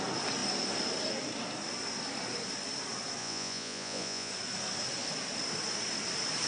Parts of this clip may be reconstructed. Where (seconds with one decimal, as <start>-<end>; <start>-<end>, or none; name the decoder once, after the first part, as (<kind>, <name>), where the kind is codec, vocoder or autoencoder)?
3.2-4.3 (vocoder, Vocos)

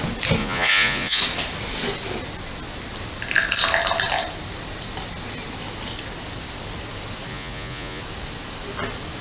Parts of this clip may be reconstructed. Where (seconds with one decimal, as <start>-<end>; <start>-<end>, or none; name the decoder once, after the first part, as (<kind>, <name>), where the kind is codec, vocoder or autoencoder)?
0.4-1.2 (vocoder, Vocos); 7.3-8.0

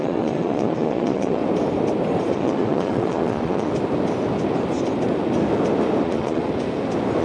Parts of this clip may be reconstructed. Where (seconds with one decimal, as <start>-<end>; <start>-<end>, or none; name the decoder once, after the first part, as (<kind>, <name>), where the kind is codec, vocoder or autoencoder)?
0.0-1.4 (vocoder, Vocos); 2.3-3.7; 6.0-6.4

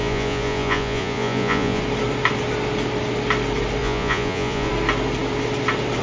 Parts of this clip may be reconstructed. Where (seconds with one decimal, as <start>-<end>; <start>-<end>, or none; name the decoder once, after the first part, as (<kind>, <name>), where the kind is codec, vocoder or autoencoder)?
0.0-1.8 (vocoder, Vocos); 3.8-4.7

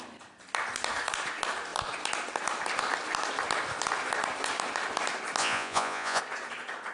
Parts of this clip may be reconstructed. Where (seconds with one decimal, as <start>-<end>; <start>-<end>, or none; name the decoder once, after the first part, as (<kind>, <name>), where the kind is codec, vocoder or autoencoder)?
5.4-6.2 (vocoder, Vocos)